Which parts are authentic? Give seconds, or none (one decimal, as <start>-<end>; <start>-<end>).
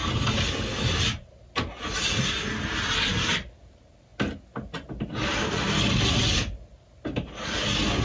0.0-8.0